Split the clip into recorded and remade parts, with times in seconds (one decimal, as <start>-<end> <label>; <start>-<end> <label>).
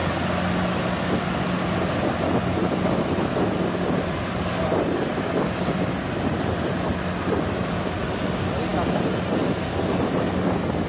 0.0-10.9 recorded